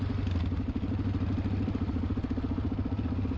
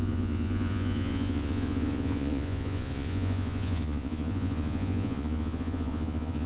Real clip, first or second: first